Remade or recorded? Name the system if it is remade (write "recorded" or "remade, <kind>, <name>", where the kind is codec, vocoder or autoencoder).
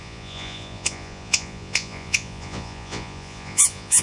remade, vocoder, Vocos